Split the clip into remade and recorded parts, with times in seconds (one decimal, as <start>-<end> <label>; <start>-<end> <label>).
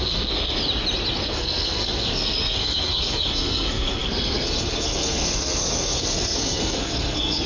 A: 0.0-0.6 remade; 0.6-1.2 recorded; 1.2-7.5 remade